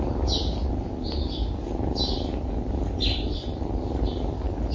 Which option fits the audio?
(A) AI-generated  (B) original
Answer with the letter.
B